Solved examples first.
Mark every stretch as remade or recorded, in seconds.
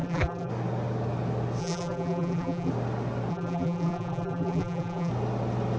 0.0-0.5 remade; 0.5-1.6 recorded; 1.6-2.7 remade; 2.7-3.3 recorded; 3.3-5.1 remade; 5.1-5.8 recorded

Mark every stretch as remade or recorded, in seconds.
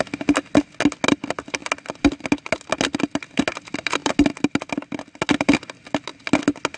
0.0-6.8 recorded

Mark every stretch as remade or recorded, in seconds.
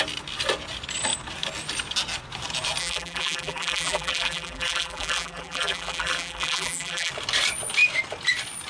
0.0-2.8 recorded; 2.8-7.1 remade; 7.1-8.7 recorded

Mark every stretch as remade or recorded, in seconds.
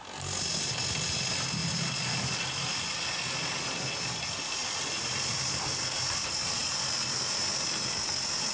0.0-8.5 recorded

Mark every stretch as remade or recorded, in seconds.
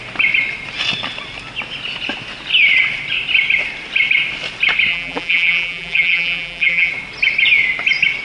0.0-4.9 recorded; 4.9-6.9 remade; 6.9-8.2 recorded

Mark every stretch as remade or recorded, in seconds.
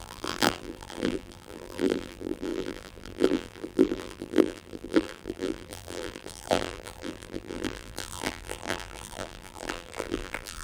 0.0-10.6 remade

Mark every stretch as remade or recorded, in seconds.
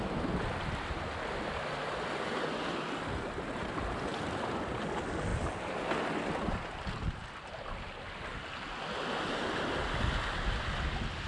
0.0-4.1 recorded; 4.1-4.8 remade; 4.8-5.3 recorded; 5.3-5.9 remade; 5.9-11.3 recorded